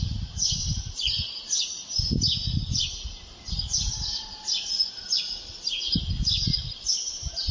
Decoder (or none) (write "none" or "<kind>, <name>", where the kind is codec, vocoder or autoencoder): none